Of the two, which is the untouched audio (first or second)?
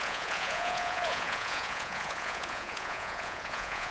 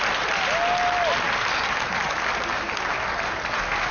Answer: second